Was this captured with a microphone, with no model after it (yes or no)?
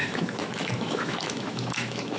no